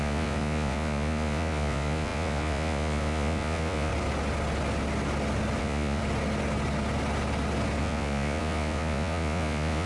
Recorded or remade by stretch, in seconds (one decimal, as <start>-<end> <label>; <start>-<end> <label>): 0.0-3.9 remade; 3.9-5.6 recorded; 5.6-6.0 remade; 6.0-7.8 recorded; 7.8-9.9 remade